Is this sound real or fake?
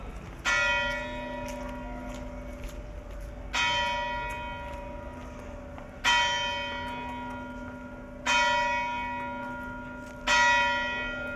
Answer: real